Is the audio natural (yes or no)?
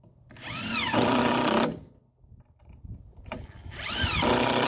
no